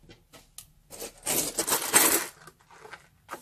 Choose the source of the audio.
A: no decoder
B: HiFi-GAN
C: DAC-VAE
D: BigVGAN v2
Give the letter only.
A